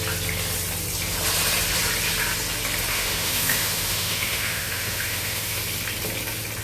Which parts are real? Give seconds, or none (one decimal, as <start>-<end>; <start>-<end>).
0.0-2.9; 5.6-6.6